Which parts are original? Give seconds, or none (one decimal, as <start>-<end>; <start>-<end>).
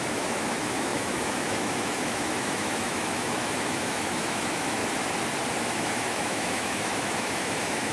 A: 4.8-5.6